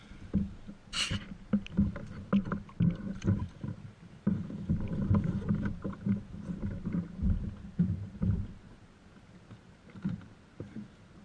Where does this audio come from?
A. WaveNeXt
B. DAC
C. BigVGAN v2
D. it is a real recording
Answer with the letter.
D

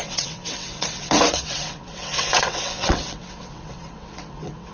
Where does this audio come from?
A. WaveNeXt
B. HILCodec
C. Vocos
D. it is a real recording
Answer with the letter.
A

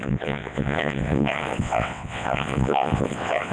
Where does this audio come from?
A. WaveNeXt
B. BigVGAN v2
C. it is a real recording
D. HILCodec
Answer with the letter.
A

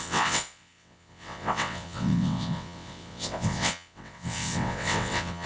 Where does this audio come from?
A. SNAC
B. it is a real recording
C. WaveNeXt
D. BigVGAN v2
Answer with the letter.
C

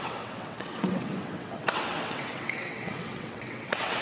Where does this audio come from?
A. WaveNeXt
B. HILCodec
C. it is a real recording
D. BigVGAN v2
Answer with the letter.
A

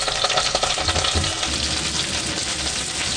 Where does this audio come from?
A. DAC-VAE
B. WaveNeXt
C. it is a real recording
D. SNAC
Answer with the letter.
C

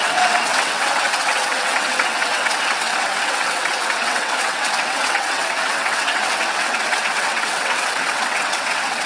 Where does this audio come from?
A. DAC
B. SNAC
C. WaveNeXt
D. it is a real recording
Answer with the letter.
C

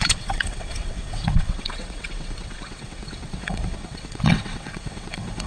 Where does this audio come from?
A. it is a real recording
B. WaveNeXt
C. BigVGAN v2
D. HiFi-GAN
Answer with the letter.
B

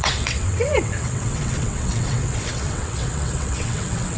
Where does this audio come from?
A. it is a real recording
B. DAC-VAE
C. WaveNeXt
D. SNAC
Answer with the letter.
C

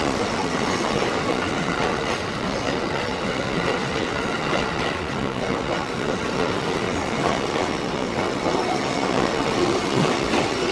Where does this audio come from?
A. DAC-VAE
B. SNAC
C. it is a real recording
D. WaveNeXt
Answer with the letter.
D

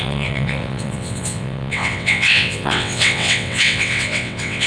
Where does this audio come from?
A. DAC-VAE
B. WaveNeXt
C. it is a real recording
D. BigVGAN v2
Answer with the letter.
B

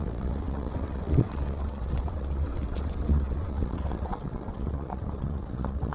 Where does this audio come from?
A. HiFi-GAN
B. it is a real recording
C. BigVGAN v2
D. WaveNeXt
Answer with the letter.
D